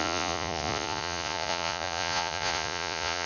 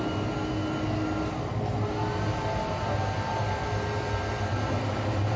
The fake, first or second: first